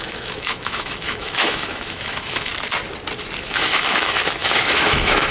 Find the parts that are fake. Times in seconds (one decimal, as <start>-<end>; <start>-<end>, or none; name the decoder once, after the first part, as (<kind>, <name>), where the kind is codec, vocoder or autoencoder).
0.0-2.5 (autoencoder, DAC-VAE); 3.4-5.3